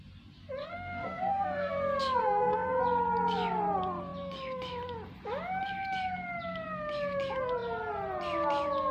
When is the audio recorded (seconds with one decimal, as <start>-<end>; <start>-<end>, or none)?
0.0-0.6; 1.7-2.2; 2.8-8.9